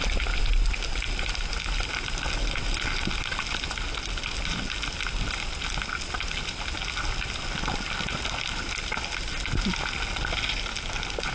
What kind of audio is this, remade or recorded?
recorded